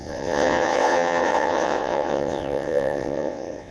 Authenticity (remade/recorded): remade